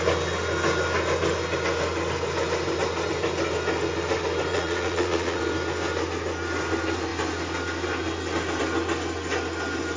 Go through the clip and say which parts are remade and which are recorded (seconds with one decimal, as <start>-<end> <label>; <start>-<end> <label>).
0.0-4.5 recorded; 4.5-5.4 remade; 5.4-10.0 recorded